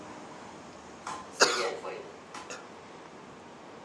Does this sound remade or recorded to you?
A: recorded